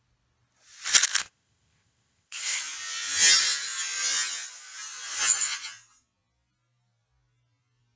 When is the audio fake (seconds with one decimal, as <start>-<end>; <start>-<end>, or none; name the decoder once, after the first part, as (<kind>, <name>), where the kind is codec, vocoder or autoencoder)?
1.2-2.6 (codec, ZipCodec)